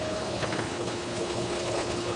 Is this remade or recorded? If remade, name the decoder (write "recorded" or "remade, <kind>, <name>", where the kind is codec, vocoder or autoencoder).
remade, codec, HILCodec